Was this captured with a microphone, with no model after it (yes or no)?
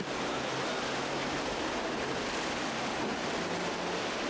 yes